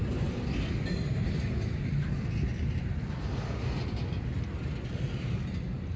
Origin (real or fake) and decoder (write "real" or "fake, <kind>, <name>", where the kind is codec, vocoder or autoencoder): real